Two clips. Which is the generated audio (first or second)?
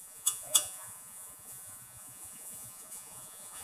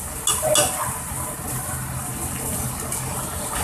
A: first